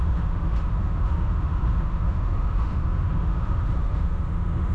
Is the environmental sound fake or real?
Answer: fake